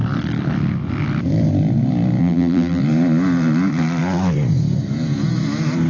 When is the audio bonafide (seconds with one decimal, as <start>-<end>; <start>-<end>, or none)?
0.0-2.2; 2.8-5.9